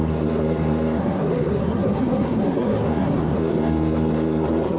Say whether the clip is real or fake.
fake